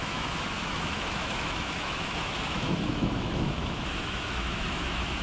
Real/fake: fake